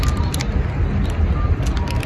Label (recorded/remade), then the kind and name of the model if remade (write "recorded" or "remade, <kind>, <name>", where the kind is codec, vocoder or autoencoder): recorded